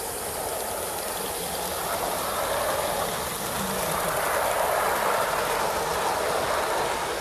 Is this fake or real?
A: real